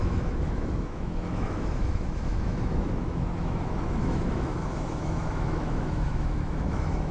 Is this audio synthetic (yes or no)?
yes